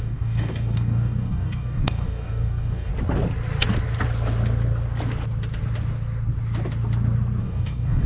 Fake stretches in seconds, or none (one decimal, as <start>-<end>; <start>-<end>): 0.0-2.9; 7.4-8.1